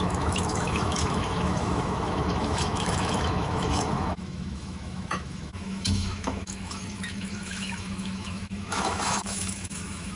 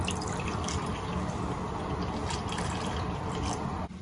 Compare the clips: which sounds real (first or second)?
second